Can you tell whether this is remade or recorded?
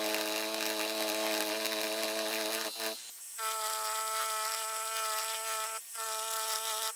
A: recorded